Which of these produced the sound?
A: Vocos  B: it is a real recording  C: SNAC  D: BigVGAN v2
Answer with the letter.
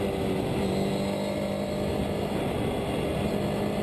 B